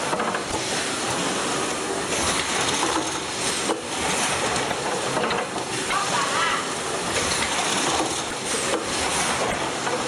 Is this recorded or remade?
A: recorded